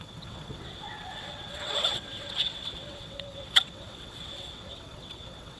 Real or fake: fake